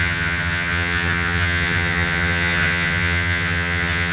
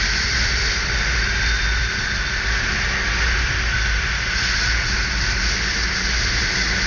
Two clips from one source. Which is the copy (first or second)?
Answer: first